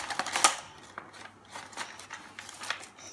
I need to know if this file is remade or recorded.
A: recorded